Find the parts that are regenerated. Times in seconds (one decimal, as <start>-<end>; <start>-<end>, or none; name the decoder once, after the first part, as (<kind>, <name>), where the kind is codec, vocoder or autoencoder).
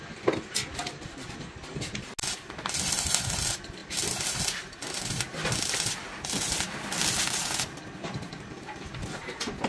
none